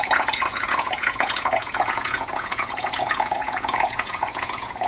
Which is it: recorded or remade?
remade